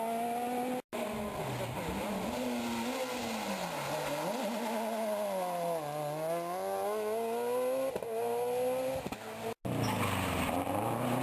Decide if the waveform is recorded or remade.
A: recorded